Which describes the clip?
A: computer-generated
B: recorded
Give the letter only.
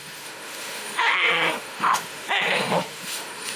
A